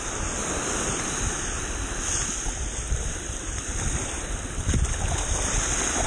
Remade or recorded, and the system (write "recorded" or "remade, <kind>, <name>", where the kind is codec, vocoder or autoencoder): recorded